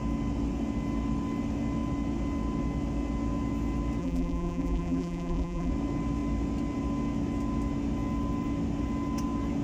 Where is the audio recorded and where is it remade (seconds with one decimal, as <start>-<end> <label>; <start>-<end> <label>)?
0.0-4.0 recorded; 4.0-5.7 remade; 5.7-9.6 recorded